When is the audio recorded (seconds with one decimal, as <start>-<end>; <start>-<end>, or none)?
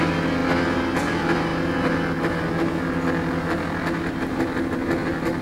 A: 0.0-5.4